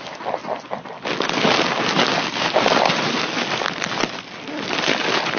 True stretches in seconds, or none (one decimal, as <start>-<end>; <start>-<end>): 0.0-5.4

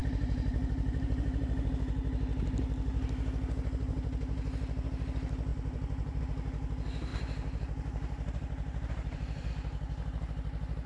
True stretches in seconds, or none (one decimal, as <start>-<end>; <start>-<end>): 1.7-5.5; 6.2-7.1; 9.5-10.9

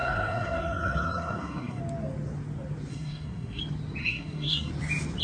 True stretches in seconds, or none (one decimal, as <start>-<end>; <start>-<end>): 1.8-2.9; 3.6-4.0; 4.7-5.2

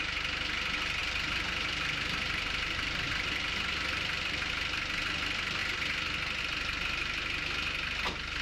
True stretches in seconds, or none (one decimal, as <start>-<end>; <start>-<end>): 0.0-1.0; 4.5-8.4

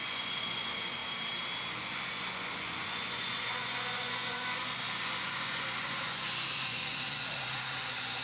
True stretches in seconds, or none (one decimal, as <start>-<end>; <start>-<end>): 1.0-1.7

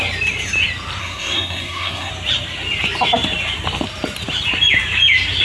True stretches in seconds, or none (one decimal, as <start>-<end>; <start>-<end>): 0.0-1.0; 2.1-5.4